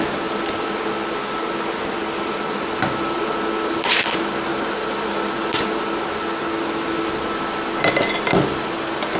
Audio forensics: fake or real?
real